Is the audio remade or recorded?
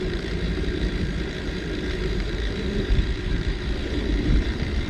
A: remade